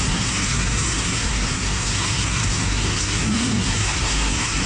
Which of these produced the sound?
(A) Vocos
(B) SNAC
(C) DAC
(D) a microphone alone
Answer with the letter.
B